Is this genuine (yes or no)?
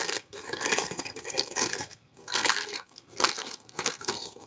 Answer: no